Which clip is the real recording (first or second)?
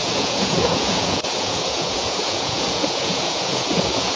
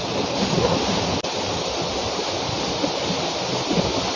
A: second